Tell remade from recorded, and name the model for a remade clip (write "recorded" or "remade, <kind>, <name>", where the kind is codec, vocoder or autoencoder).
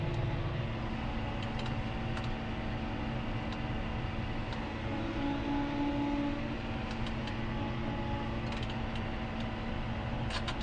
recorded